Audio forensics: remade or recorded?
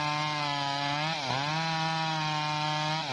recorded